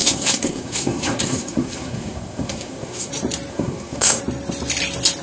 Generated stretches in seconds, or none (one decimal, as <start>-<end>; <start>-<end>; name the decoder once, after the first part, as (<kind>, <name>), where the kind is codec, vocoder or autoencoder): 0.0-3.1 (codec, SNAC); 3.5-4.2